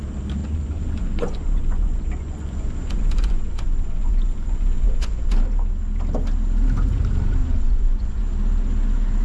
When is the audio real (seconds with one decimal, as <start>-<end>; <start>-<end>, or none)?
0.0-0.4; 5.3-7.4; 8.2-9.2

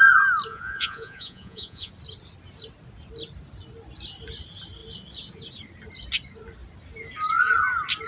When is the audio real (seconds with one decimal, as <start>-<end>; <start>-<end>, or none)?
0.0-0.5; 1.9-8.1

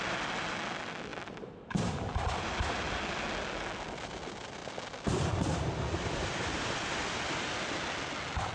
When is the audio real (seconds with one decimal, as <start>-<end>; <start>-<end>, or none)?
0.0-8.5